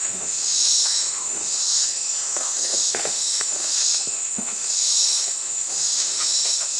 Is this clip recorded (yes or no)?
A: no